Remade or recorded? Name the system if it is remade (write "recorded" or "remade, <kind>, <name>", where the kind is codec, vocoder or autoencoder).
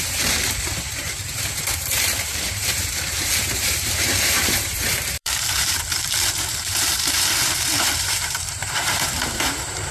remade, vocoder, BigVGAN v2